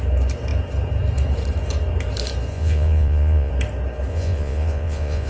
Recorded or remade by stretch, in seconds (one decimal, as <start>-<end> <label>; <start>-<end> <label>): 0.0-2.5 recorded; 2.5-3.5 remade; 3.5-4.1 recorded; 4.1-5.3 remade